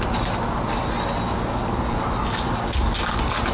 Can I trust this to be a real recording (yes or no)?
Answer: yes